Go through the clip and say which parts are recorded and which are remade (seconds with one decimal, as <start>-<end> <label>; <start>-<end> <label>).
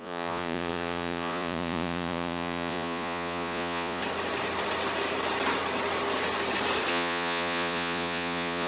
0.0-4.0 remade; 4.0-6.9 recorded; 6.9-8.7 remade